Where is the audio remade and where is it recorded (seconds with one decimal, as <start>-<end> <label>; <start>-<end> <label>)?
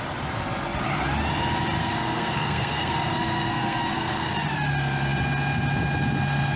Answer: 0.0-1.8 recorded; 1.8-4.3 remade; 4.3-6.6 recorded